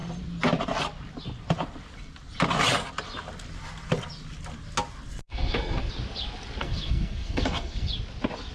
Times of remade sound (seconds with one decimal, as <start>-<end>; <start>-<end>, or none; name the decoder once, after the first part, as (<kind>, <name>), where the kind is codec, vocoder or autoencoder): 5.2-5.9 (codec, SNAC); 6.6-7.9